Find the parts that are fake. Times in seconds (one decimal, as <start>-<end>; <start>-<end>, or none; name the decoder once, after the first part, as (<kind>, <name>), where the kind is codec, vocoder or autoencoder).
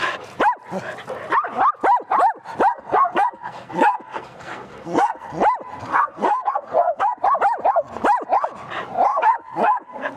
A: 2.7-5.3 (codec, SNAC); 5.9-7.2; 9.1-10.2